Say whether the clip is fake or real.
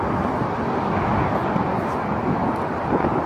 real